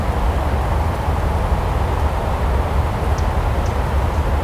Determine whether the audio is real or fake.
real